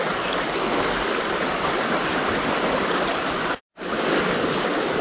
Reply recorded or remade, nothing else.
recorded